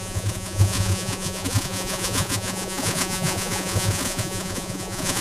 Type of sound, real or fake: fake